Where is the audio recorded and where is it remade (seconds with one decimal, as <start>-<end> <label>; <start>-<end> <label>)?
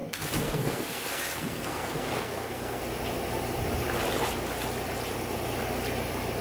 0.0-2.8 remade; 2.8-6.4 recorded